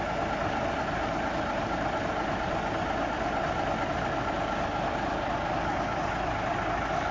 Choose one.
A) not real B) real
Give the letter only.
B